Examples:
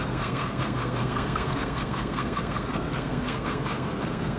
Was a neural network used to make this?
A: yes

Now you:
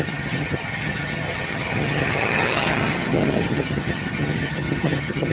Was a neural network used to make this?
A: yes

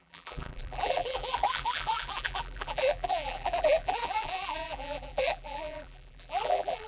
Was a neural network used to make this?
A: yes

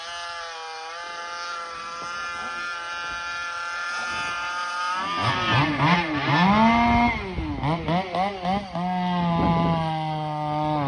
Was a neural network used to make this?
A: no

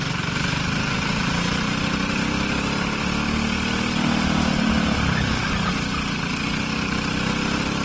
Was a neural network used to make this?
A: no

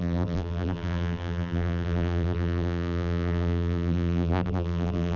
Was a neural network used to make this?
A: yes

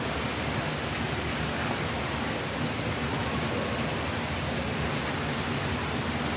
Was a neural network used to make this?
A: no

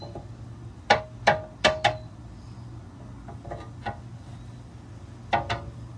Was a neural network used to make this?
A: no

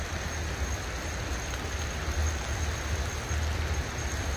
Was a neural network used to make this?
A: no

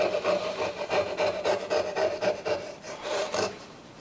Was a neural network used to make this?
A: yes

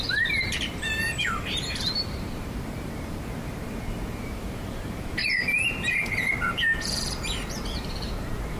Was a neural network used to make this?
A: yes